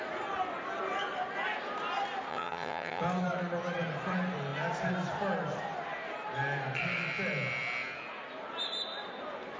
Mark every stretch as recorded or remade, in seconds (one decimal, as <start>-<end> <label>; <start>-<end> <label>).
0.0-2.3 recorded; 2.3-3.0 remade; 3.0-9.6 recorded